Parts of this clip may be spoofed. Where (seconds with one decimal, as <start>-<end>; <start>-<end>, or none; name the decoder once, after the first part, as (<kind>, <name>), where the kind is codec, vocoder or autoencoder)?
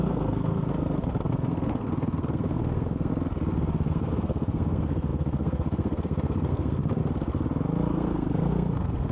0.0-3.1 (codec, SNAC); 3.9-7.0; 7.9-9.1